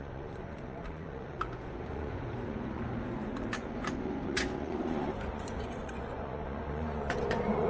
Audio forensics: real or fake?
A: fake